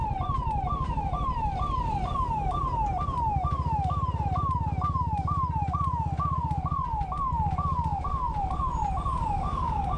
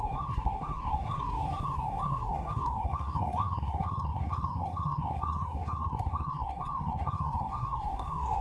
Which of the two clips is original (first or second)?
first